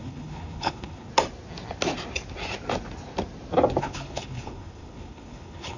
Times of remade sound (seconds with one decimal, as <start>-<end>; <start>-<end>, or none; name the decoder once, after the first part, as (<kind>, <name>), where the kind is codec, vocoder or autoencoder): 0.0-1.1 (codec, HILCodec); 3.8-5.8